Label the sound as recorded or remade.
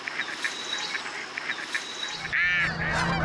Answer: recorded